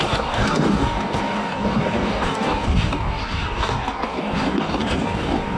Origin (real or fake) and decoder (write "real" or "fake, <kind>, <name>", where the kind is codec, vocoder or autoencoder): fake, codec, DAC